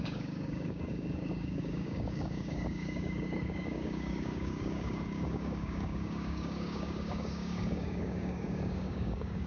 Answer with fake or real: fake